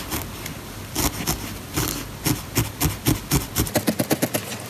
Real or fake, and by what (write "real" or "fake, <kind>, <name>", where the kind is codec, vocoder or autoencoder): real